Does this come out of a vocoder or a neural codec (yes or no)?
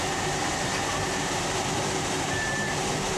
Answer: yes